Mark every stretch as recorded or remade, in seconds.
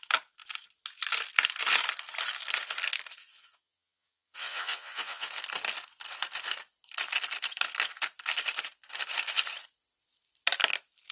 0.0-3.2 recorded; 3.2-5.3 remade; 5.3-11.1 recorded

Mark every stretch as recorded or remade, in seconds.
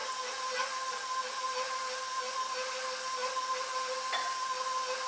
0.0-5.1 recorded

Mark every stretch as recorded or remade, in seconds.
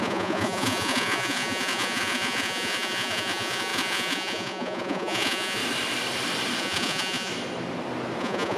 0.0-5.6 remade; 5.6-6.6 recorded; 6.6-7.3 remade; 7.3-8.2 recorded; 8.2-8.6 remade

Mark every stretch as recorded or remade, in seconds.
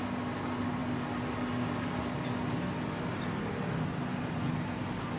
0.0-5.2 recorded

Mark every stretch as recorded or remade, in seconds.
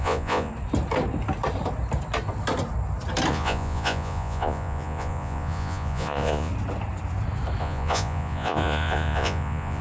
0.0-0.5 remade; 0.5-3.3 recorded; 3.3-6.5 remade; 6.5-7.6 recorded; 7.6-9.8 remade